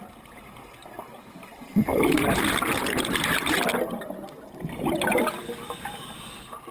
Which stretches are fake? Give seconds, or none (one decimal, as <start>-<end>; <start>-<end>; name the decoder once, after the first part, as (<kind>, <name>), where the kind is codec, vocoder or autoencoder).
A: 0.0-1.9 (vocoder, BigVGAN v2); 3.7-5.4